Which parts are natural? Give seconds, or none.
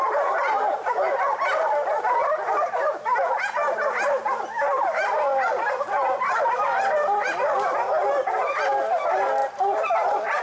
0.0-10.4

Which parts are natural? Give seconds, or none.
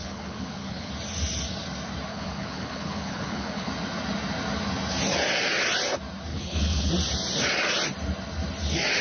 0.9-2.1; 3.7-6.3; 6.9-9.0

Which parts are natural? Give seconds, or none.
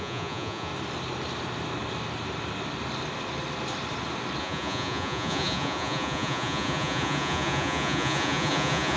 0.7-4.4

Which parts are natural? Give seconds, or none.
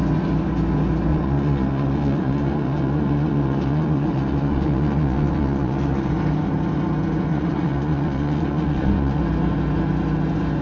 0.0-1.1; 6.1-7.3; 9.2-10.6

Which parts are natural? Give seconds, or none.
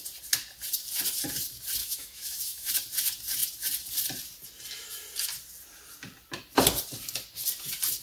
0.0-1.8; 2.7-8.0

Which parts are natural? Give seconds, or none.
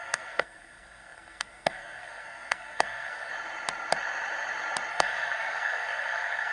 3.3-4.9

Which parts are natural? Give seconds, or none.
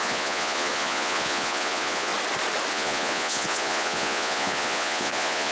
2.1-2.7